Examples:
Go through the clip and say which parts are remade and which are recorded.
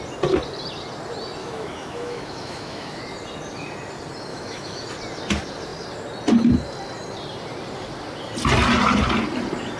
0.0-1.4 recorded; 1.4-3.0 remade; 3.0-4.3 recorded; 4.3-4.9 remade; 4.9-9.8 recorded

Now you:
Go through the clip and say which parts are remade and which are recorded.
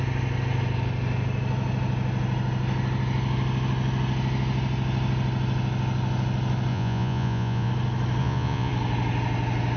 0.0-6.7 recorded; 6.7-7.7 remade; 7.7-8.2 recorded; 8.2-8.7 remade; 8.7-9.8 recorded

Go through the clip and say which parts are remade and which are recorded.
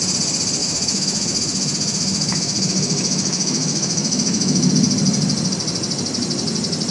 0.0-0.6 recorded; 0.6-4.7 remade; 4.7-6.9 recorded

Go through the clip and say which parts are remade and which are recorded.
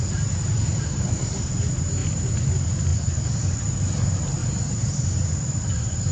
0.0-2.9 remade; 2.9-3.8 recorded; 3.8-6.1 remade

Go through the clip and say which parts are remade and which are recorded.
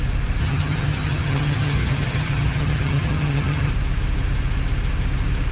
0.0-0.4 recorded; 0.4-3.7 remade; 3.7-5.5 recorded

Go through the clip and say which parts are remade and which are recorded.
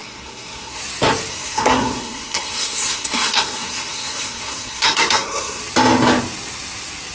0.0-0.8 remade; 0.8-1.3 recorded; 1.3-5.6 remade; 5.6-7.1 recorded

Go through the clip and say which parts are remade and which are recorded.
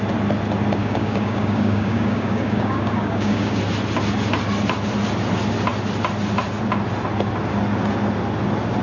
0.0-0.8 recorded; 0.8-3.6 remade; 3.6-8.8 recorded